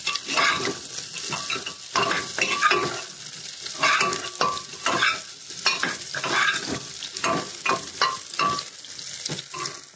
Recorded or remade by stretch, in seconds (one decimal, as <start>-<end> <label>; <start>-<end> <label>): 0.0-10.0 recorded